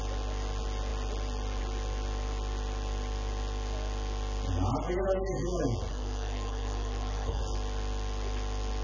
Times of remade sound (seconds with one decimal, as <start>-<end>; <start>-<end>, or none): 5.9-7.4